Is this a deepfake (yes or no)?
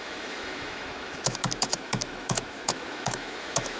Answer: yes